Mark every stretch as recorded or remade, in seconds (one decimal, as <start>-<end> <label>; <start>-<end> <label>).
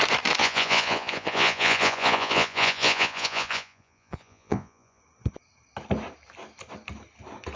0.0-0.4 recorded; 0.4-5.0 remade; 5.0-7.6 recorded